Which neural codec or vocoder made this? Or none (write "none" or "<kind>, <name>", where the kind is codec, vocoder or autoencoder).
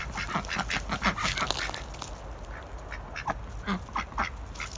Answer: none